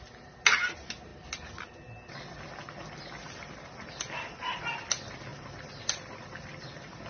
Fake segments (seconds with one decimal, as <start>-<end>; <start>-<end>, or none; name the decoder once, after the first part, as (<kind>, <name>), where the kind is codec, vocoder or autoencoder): none